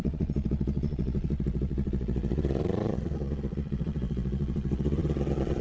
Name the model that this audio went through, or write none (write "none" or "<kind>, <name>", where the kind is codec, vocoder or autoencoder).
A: vocoder, Vocos